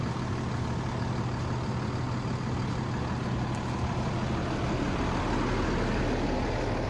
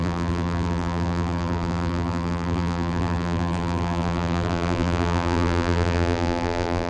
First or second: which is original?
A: first